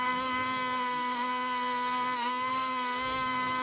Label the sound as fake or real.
fake